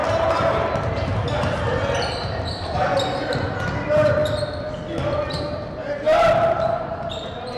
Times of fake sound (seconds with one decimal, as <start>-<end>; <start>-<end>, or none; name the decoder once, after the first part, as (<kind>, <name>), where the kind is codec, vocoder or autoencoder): 2.2-4.2 (vocoder, BigVGAN v2); 6.8-7.6